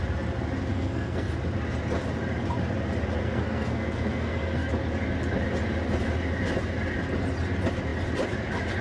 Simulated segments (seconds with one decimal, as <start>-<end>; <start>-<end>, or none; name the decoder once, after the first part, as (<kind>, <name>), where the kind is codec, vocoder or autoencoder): 0.7-1.3 (codec, SNAC); 3.2-4.7